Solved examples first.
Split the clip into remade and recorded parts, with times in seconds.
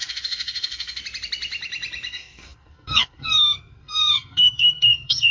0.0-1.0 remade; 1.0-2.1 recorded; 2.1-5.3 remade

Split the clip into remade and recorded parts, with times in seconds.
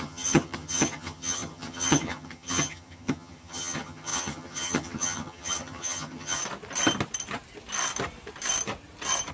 0.0-6.4 remade; 6.4-9.3 recorded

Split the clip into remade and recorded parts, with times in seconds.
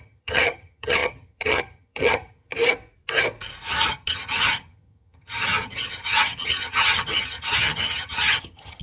0.0-2.5 remade; 2.5-3.9 recorded; 3.9-8.8 remade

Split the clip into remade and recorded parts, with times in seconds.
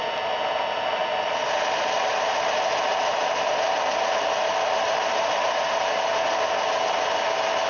0.0-7.7 recorded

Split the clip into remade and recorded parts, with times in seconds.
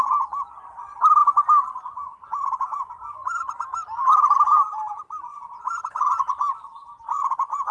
0.0-1.2 recorded; 1.2-5.8 remade; 5.8-7.7 recorded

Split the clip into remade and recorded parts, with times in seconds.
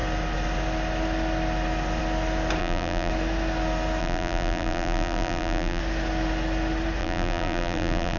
0.0-2.6 recorded; 2.6-3.1 remade; 3.1-4.0 recorded; 4.0-5.8 remade; 5.8-7.0 recorded; 7.0-8.2 remade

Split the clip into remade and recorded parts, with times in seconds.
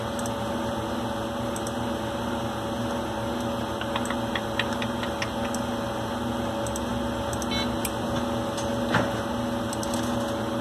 0.0-10.6 recorded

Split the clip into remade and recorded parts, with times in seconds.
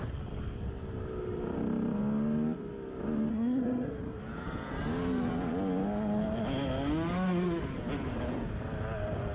0.0-3.3 recorded; 3.3-4.2 remade; 4.2-9.3 recorded